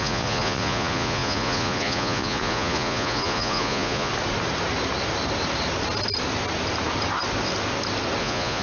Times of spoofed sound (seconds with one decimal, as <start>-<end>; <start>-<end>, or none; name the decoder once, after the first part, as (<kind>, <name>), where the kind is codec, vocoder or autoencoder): 0.0-4.1 (vocoder, Vocos); 8.2-8.6